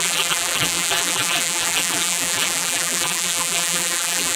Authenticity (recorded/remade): remade